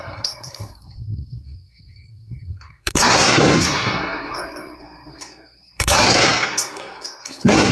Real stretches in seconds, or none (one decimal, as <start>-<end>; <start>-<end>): none

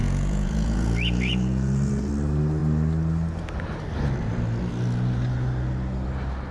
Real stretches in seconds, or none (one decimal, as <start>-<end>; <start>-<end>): 2.1-6.5